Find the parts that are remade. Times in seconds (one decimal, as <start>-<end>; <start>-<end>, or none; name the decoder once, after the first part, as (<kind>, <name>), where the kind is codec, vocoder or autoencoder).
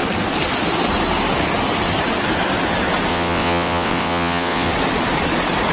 3.1-4.7 (vocoder, WaveNeXt)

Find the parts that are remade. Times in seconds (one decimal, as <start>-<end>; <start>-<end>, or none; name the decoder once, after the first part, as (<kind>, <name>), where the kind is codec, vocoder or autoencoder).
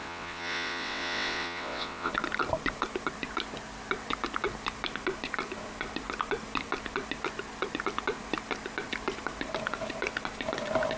0.0-2.1 (vocoder, WaveNeXt)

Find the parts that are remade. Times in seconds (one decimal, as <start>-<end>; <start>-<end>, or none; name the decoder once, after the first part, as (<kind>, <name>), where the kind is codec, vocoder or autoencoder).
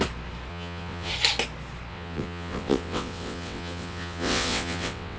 0.5-1.1 (vocoder, WaveNeXt); 1.9-5.2